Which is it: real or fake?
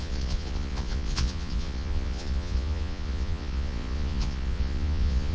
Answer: fake